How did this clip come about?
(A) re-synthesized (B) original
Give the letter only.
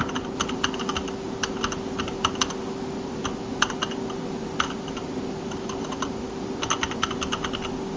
B